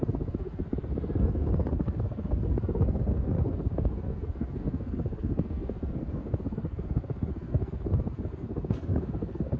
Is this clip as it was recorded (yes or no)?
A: no